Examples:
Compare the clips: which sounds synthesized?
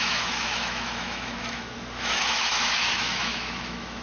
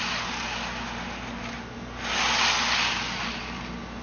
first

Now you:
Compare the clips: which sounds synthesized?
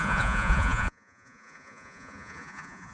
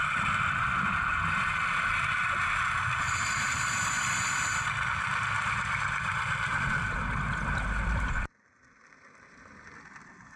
first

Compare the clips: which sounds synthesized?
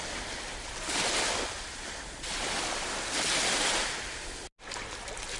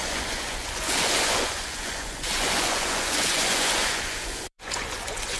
second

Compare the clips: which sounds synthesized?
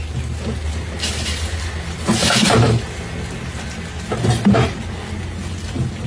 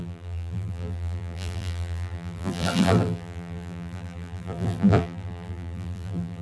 second